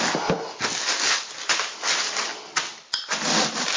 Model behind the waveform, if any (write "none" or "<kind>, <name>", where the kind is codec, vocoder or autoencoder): none